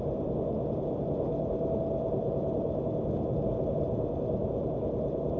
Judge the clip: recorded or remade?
recorded